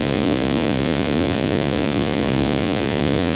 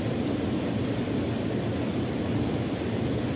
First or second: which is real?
second